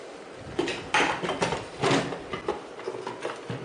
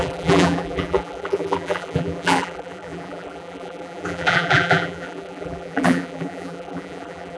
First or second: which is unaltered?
first